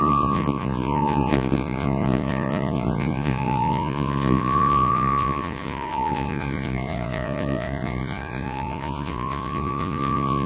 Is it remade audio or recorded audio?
remade